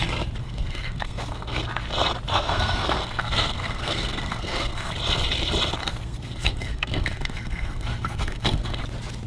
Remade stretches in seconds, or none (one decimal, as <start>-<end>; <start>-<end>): 0.4-1.6; 2.3-4.9; 5.8-8.8